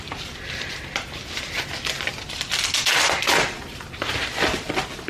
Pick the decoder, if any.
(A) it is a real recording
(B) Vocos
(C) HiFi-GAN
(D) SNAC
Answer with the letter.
A